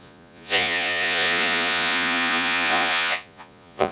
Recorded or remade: remade